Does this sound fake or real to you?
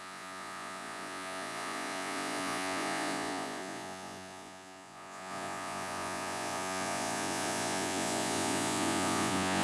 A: fake